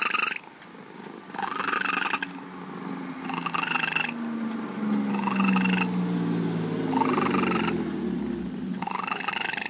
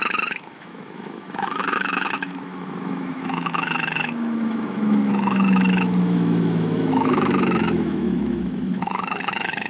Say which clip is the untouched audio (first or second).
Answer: first